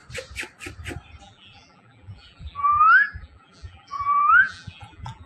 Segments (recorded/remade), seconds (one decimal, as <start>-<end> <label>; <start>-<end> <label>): 0.0-1.2 recorded; 1.2-5.3 remade